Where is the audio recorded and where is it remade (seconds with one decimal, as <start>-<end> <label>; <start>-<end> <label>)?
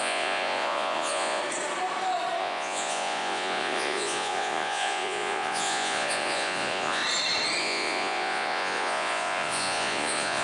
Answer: 0.0-1.4 remade; 1.4-2.4 recorded; 2.4-7.0 remade; 7.0-7.6 recorded; 7.6-10.4 remade